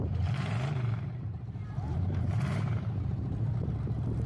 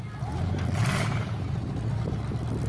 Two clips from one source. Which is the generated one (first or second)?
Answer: first